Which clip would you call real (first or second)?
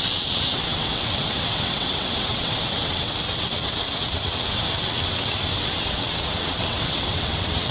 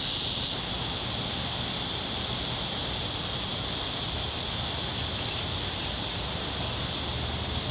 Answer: second